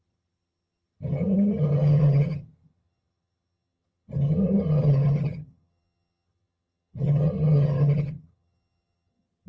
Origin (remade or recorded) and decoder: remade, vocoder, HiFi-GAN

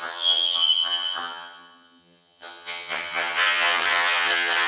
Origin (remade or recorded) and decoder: remade, vocoder, HiFi-GAN